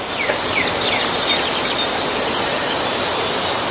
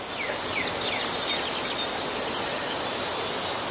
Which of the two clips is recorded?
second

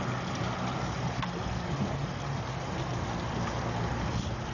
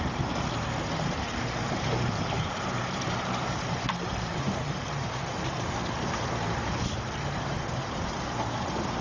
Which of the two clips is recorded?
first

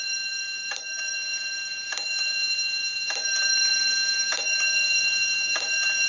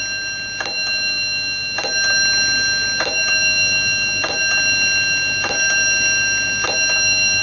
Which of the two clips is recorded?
second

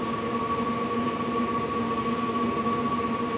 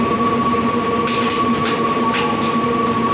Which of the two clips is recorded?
first